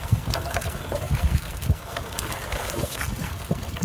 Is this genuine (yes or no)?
no